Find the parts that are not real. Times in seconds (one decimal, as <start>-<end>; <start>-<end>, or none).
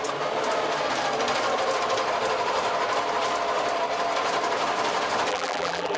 5.3-6.0